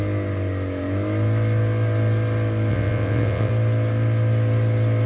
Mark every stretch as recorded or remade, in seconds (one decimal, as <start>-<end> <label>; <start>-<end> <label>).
0.0-2.7 recorded; 2.7-3.5 remade; 3.5-5.1 recorded